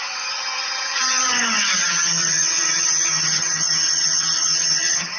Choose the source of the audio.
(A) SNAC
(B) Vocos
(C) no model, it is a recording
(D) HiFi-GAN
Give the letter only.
D